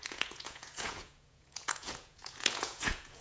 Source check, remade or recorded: remade